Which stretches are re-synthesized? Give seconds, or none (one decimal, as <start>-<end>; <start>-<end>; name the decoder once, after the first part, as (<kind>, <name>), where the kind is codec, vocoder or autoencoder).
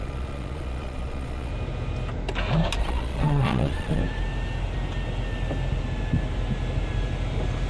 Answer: 0.0-1.5 (vocoder, Vocos); 2.8-4.0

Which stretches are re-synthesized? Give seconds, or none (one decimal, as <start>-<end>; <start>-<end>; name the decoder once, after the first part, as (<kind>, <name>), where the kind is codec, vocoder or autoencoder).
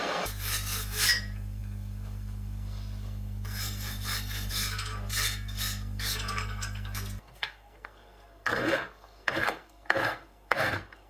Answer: 0.0-11.1 (codec, SNAC)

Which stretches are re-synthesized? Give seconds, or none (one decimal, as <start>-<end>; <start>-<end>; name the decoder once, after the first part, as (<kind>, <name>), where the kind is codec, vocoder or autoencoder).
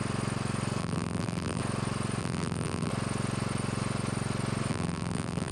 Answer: 0.8-1.6 (vocoder, BigVGAN v2); 2.2-2.9; 4.7-5.5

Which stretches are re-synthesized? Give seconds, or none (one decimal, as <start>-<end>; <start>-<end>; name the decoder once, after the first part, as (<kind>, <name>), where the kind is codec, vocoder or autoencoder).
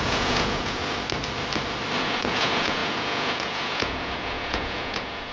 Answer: 0.0-0.8 (vocoder, Vocos); 2.0-5.3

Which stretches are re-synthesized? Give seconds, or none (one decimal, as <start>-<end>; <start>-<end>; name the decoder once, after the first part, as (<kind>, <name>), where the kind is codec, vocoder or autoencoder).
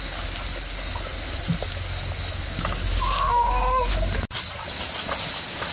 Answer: none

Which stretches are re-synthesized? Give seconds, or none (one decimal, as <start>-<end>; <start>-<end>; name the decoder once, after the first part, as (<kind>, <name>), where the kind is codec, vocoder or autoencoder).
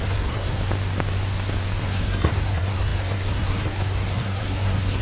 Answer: 0.0-0.6 (codec, SNAC); 1.8-5.0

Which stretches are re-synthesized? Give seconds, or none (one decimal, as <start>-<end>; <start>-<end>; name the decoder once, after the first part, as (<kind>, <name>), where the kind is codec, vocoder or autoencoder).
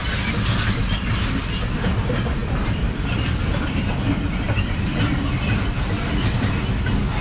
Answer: 0.0-1.4 (vocoder, BigVGAN v2); 2.4-5.5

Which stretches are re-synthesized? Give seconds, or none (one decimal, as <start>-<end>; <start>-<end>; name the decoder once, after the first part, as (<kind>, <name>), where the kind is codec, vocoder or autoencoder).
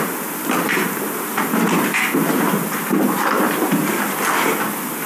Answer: none